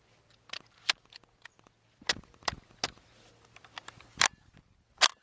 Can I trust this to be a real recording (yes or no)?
yes